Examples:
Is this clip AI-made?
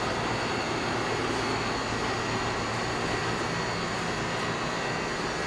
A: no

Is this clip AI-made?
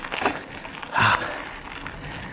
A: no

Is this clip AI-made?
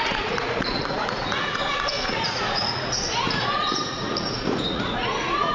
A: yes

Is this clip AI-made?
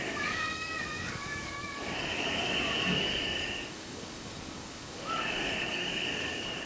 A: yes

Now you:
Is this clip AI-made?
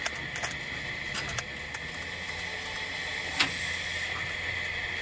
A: no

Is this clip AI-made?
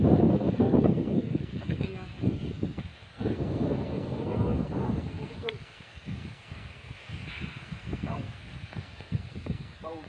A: yes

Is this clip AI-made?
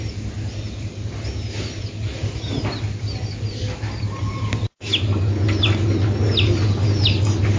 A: no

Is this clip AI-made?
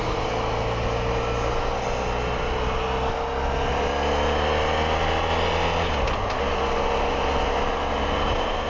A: no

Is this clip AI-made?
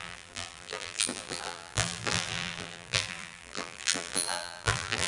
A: yes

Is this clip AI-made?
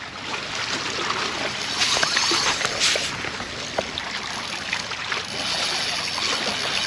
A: no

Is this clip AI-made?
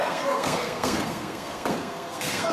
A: yes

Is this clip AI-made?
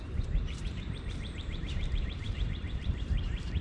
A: yes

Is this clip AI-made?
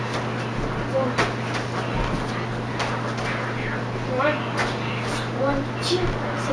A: no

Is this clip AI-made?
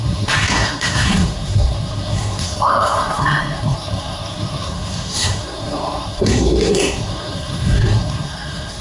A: yes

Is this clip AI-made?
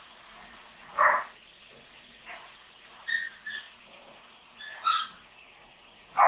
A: yes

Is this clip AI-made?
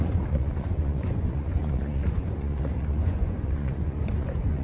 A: yes